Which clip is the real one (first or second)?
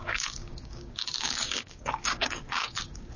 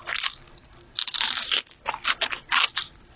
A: second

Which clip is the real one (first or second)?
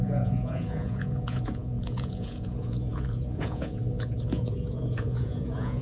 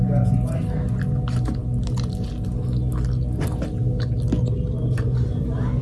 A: second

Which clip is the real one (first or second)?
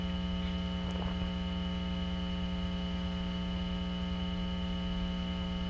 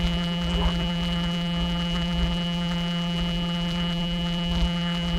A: first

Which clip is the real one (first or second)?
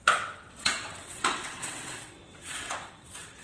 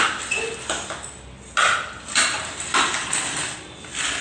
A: second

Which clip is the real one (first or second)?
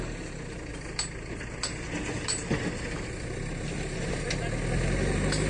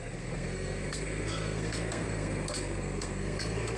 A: first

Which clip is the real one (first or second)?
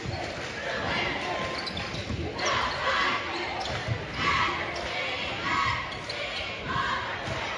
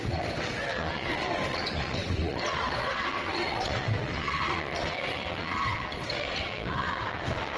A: first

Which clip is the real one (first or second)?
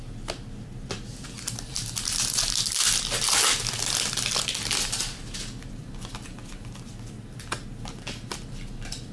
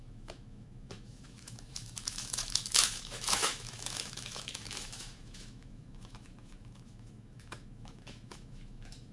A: first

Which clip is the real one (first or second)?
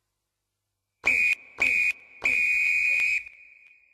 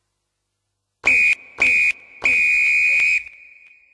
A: second